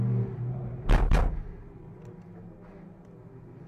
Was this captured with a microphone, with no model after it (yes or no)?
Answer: yes